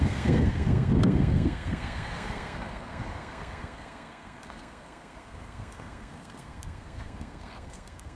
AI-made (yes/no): yes